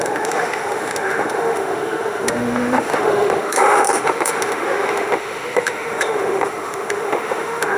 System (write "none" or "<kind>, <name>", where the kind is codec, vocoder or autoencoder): autoencoder, DAC-VAE